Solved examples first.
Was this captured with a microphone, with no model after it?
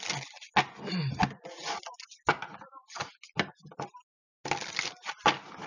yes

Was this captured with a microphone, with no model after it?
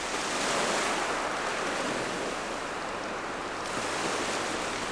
yes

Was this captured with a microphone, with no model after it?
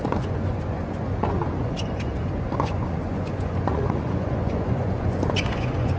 no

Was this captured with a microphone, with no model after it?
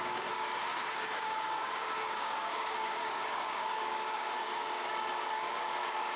no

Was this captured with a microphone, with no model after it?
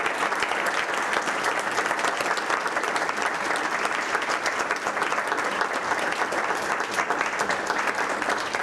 yes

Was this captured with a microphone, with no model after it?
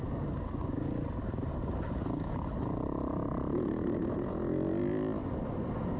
yes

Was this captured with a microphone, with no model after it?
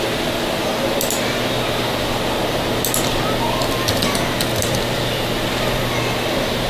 yes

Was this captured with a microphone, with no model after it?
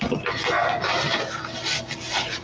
yes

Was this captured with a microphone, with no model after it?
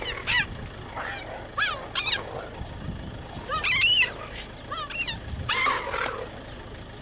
yes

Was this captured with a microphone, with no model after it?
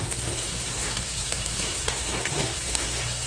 no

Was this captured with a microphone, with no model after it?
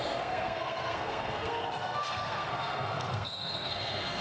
no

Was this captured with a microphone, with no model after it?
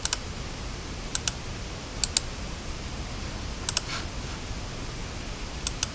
yes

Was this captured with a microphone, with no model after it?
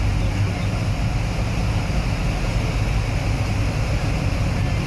yes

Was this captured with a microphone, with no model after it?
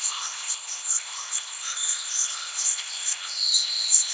no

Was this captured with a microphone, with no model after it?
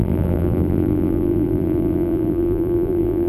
no